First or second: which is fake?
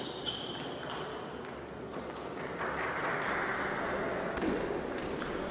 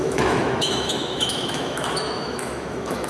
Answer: second